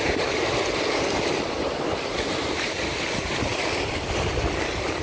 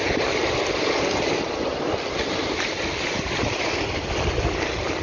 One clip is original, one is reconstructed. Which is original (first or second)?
second